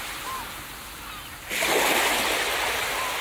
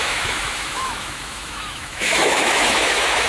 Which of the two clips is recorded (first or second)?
first